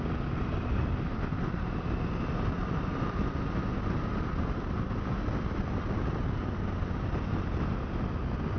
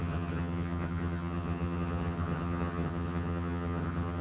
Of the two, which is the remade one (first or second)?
second